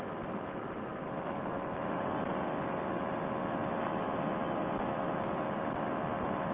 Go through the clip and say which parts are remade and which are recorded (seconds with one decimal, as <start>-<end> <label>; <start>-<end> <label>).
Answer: 0.0-6.5 recorded